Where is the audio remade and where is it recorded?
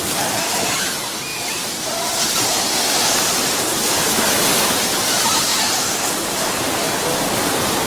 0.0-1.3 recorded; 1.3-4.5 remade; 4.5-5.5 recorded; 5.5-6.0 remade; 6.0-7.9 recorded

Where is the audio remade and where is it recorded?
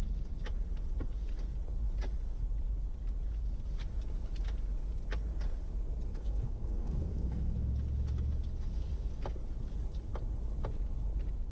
0.0-6.1 recorded; 6.1-7.7 remade; 7.7-11.5 recorded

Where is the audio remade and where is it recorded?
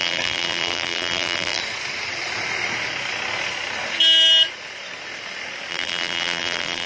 0.0-1.6 remade; 1.6-5.7 recorded; 5.7-6.9 remade